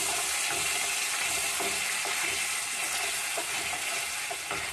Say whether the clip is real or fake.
real